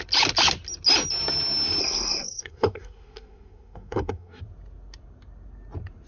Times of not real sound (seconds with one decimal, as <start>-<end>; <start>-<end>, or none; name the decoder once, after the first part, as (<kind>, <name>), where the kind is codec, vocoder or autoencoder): 1.8-4.4 (codec, SNAC)